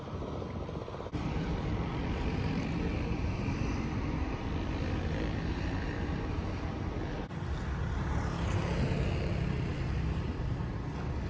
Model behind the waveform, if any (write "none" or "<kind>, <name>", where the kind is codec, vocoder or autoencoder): none